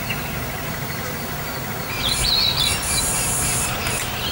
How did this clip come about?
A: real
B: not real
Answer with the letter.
B